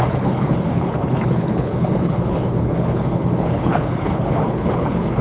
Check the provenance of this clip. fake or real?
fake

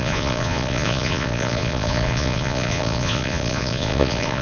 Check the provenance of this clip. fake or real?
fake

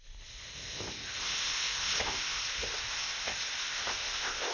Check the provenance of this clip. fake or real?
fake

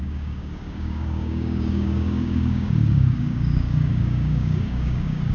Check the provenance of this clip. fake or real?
fake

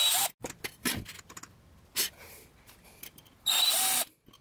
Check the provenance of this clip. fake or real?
real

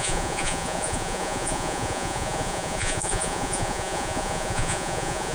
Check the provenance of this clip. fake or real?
fake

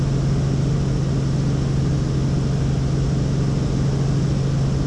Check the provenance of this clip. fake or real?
real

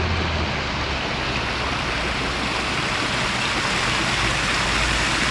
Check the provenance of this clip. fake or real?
real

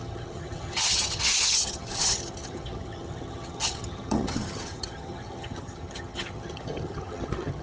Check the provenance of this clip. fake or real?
fake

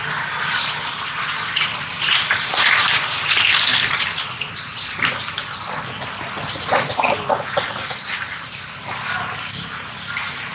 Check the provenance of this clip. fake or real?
real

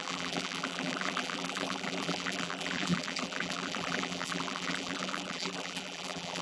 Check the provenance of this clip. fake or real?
fake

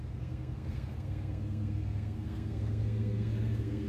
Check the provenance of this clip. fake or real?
fake